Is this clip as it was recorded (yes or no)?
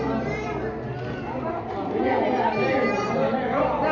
yes